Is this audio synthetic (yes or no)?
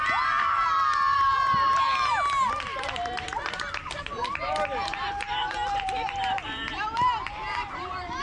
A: yes